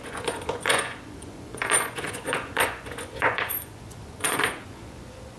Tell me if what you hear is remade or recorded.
remade